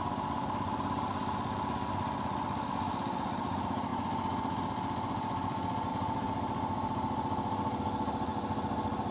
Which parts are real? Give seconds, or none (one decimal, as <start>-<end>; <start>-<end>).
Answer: 0.0-9.1